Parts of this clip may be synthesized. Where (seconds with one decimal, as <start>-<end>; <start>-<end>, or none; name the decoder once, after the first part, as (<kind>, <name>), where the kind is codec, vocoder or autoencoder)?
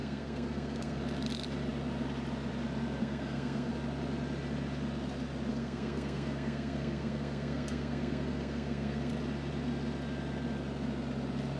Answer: 0.0-1.0 (codec, SNAC); 3.0-3.7; 5.5-9.1